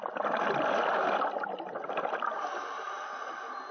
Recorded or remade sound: recorded